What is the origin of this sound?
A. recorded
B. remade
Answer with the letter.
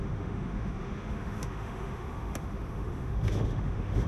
B